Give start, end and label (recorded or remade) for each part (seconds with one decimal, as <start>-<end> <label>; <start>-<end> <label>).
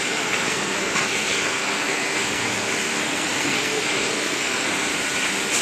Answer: 0.0-4.9 remade; 4.9-5.6 recorded